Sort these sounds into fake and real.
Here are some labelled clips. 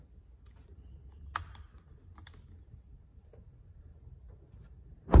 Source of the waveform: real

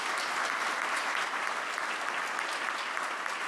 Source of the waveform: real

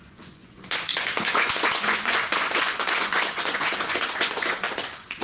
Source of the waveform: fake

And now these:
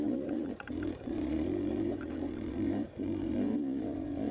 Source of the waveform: fake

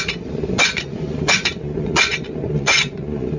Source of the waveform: fake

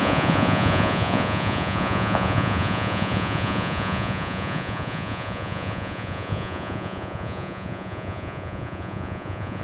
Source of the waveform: fake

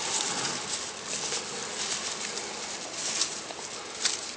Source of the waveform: real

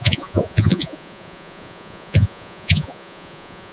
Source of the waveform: fake